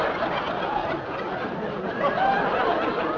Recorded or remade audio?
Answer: recorded